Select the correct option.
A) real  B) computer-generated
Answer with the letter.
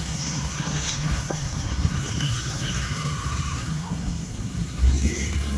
B